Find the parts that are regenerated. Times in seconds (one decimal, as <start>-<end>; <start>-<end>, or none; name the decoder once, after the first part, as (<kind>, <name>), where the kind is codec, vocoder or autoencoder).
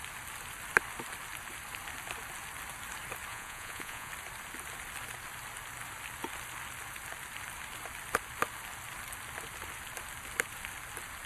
3.3-4.1 (vocoder, Vocos)